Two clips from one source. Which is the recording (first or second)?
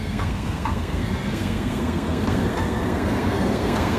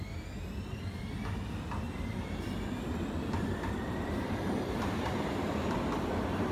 second